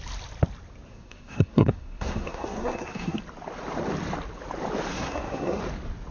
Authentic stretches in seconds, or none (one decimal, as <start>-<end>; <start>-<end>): 0.0-0.9; 3.2-4.9; 5.6-6.1